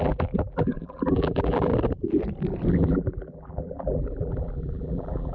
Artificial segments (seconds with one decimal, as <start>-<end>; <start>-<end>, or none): 0.0-1.7; 2.7-5.3